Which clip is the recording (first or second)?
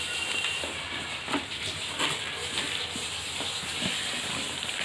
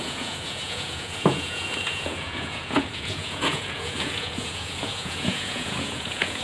first